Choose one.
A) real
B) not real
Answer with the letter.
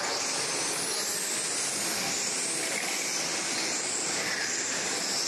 A